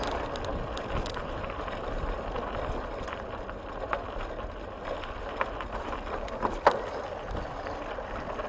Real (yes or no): yes